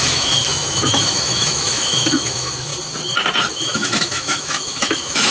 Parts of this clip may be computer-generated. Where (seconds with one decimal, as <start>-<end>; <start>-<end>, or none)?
0.0-2.7; 3.5-5.3